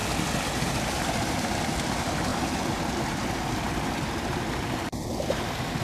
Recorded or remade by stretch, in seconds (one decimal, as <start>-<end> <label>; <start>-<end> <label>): 0.0-2.3 remade; 2.3-5.8 recorded